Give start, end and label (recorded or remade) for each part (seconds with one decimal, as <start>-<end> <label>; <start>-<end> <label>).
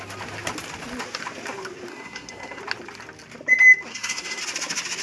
0.0-1.9 recorded; 1.9-2.6 remade; 2.6-3.9 recorded; 3.9-4.4 remade; 4.4-5.0 recorded